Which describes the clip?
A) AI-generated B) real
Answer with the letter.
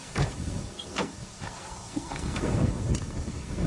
A